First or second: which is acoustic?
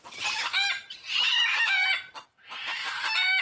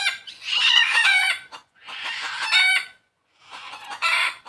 first